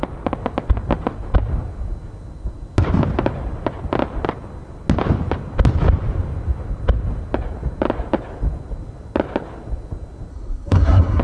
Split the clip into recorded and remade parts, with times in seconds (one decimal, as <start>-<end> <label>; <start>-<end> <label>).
0.0-10.3 recorded; 10.3-11.2 remade